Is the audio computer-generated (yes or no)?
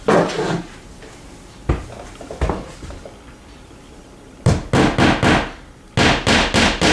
no